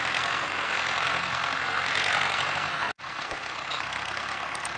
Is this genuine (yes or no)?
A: no